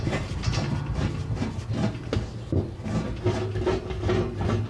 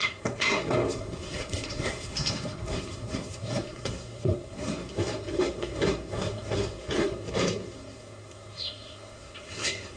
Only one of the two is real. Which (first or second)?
first